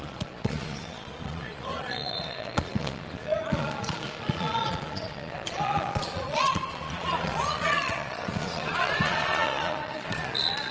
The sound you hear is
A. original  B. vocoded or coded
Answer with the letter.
B